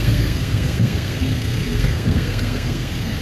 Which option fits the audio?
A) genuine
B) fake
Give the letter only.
B